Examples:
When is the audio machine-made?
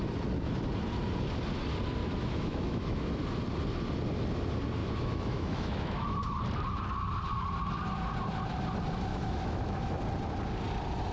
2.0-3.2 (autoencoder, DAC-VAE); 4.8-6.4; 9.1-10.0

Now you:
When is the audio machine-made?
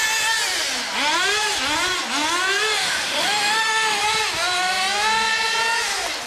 2.8-4.0 (autoencoder, DAC-VAE)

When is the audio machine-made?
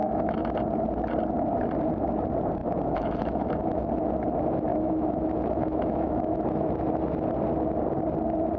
0.0-0.6 (autoencoder, DAC-VAE); 2.6-3.9; 4.7-6.5